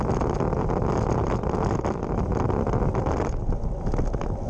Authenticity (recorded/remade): recorded